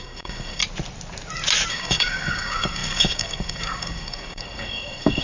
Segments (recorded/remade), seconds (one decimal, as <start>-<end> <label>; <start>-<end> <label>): 0.0-0.6 remade; 0.6-1.7 recorded; 1.7-5.2 remade